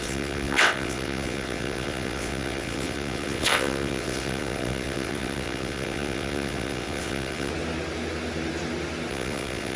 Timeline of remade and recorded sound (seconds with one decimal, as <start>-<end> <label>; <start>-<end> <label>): 0.0-7.5 remade; 7.5-9.1 recorded; 9.1-9.8 remade